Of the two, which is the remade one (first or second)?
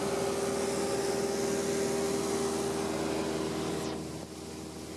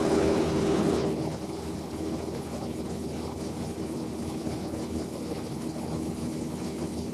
second